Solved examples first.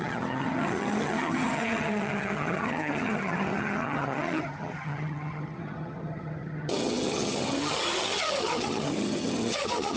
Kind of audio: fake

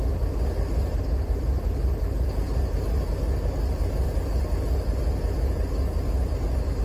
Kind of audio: real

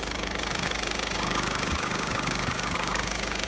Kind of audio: fake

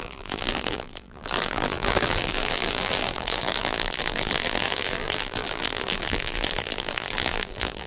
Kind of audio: fake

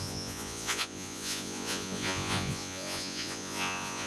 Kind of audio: fake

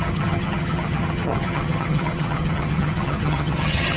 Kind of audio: fake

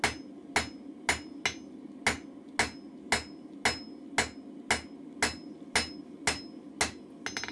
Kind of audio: real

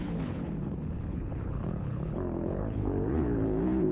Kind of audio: fake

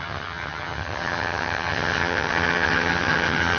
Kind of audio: fake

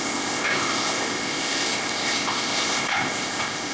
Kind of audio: fake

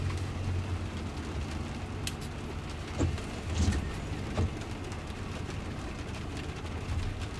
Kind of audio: real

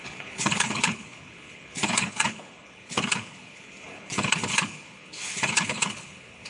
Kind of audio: fake